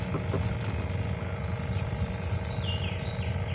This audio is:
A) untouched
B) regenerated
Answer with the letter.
A